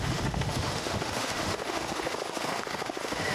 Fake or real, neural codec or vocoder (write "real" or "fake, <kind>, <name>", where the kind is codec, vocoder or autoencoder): fake, autoencoder, DAC-VAE